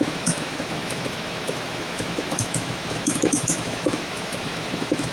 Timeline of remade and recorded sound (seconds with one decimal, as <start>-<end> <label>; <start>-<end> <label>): 0.0-5.1 remade